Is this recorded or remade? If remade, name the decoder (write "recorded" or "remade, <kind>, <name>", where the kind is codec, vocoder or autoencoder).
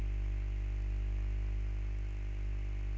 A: recorded